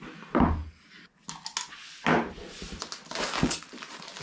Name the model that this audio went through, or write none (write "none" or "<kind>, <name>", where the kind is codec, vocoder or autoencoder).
none